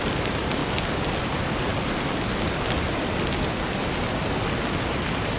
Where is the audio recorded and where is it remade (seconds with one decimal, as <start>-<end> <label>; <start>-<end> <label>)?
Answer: 0.0-0.6 remade; 0.6-1.2 recorded; 1.2-1.7 remade; 1.7-4.9 recorded; 4.9-5.4 remade